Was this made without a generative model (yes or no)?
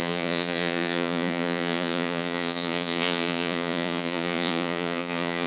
no